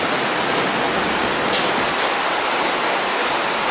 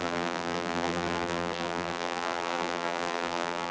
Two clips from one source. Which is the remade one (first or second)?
second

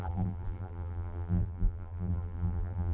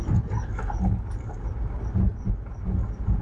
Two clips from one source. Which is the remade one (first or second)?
first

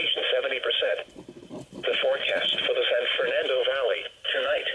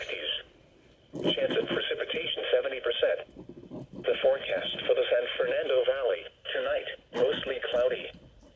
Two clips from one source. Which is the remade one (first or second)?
first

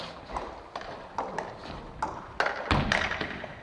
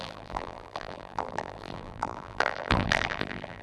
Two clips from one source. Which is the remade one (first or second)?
second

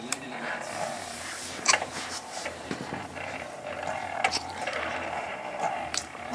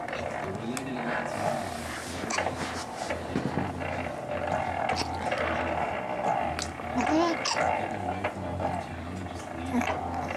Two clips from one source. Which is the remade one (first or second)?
first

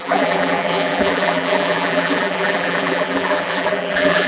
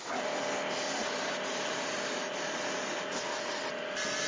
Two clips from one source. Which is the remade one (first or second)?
first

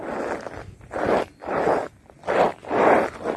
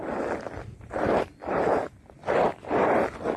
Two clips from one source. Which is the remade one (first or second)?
second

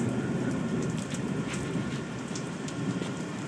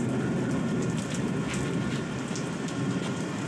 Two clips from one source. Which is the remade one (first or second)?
first